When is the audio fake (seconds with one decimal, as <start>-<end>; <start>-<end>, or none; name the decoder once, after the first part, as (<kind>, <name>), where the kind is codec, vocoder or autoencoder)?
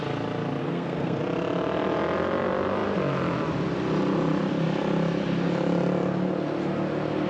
0.6-1.2 (codec, SNAC)